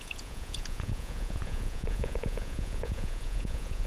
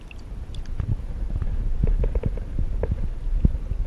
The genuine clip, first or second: second